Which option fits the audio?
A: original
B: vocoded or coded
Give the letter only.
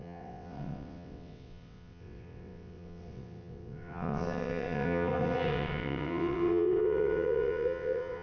B